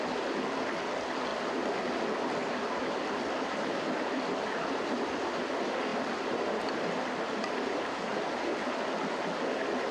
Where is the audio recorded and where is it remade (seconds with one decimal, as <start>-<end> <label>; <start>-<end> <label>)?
0.0-2.4 recorded; 2.4-4.2 remade; 4.2-9.9 recorded